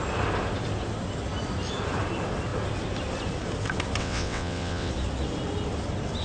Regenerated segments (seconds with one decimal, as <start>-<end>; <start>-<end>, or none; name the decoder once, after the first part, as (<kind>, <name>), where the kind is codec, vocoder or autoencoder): 4.0-4.9 (vocoder, WaveNeXt)